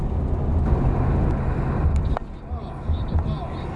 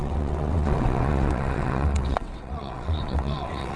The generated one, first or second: second